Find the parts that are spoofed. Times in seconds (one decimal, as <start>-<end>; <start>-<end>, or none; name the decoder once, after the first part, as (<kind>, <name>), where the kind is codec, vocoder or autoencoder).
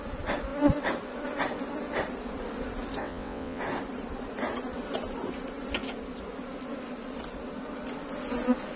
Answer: 3.0-3.6 (vocoder, WaveNeXt)